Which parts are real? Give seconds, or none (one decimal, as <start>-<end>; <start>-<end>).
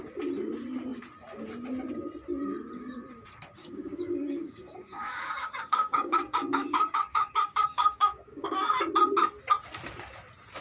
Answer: 0.0-3.6; 8.8-10.6